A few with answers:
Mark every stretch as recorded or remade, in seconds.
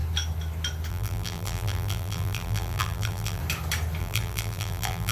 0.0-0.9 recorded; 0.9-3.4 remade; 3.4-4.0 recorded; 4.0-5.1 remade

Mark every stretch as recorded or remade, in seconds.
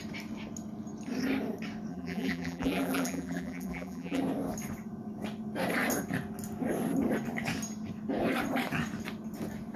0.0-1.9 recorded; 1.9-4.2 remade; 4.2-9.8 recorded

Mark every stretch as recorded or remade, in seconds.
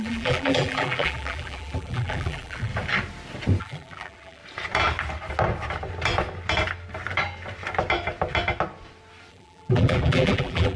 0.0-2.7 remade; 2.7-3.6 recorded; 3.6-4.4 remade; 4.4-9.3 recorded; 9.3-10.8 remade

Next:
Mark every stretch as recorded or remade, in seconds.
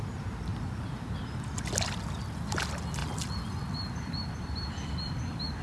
0.0-5.6 recorded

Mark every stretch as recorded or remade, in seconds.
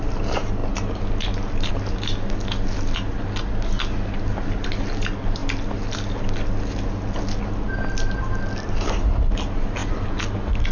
0.0-10.7 recorded